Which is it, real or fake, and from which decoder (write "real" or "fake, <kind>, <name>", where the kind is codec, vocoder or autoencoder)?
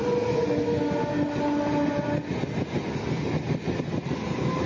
real